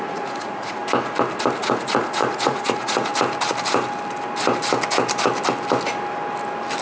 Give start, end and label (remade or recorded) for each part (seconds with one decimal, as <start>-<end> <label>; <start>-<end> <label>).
0.0-0.8 remade; 0.8-1.6 recorded; 1.6-3.1 remade; 3.1-6.8 recorded